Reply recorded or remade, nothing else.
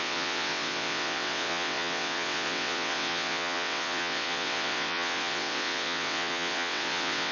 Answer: remade